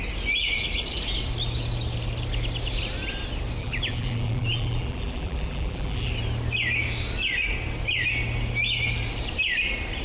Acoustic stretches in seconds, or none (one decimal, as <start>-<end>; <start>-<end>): 0.0-3.6; 6.1-10.0